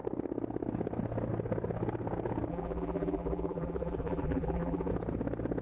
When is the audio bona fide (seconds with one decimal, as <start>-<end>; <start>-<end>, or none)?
0.0-2.5; 4.9-5.6

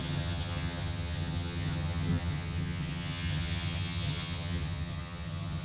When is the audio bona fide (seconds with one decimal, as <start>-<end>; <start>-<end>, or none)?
none

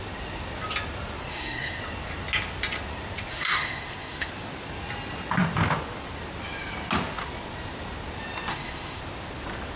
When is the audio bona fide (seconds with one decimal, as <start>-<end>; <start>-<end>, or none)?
0.0-1.3; 1.8-3.3; 4.3-8.5; 9.0-9.8

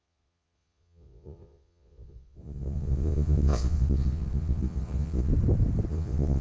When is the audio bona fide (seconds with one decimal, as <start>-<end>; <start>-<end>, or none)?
5.3-5.9

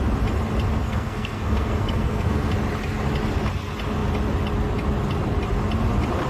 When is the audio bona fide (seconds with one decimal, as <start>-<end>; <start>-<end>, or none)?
0.0-0.8; 2.5-6.3

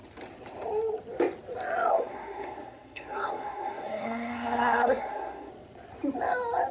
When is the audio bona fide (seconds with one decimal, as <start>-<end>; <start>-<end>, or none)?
0.0-1.9; 5.5-6.7

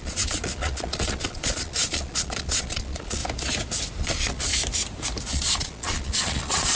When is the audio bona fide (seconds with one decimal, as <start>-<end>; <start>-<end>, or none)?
3.2-4.0; 4.5-5.3